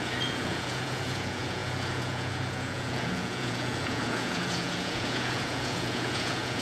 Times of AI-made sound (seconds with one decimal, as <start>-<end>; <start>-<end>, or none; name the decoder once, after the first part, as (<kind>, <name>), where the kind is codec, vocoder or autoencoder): 0.0-6.6 (vocoder, Vocos)